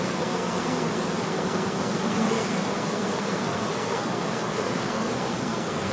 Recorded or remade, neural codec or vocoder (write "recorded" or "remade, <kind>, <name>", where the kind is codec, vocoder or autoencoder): remade, codec, SNAC